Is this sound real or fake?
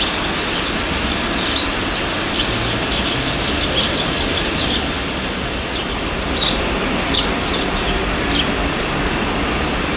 real